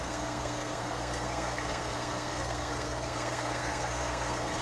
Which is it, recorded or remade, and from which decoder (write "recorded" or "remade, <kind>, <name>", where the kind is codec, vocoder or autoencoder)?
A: remade, codec, SNAC